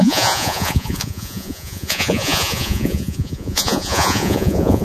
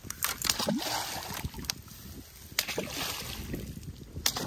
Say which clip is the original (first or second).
second